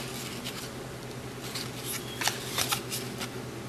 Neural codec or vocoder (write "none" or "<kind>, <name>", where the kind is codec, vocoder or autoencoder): none